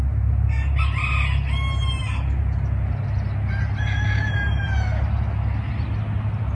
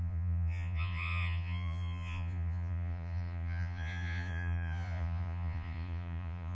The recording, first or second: first